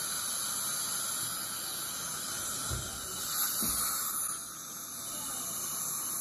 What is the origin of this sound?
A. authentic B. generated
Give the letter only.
A